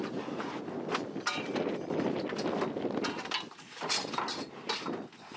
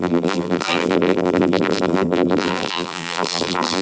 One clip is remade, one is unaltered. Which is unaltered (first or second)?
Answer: first